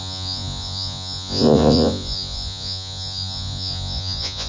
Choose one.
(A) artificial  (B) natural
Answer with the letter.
A